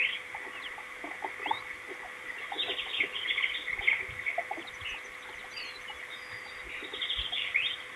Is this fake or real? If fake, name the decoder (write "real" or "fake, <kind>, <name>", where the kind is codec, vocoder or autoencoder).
real